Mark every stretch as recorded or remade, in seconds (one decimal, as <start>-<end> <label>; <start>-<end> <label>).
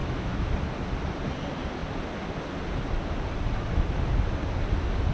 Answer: 0.0-0.5 remade; 0.5-5.1 recorded